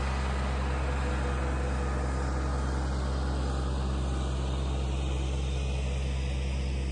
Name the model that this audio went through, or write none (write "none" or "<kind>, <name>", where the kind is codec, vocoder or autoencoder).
none